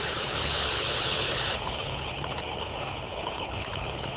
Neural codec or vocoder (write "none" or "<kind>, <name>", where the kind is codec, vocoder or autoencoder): codec, HILCodec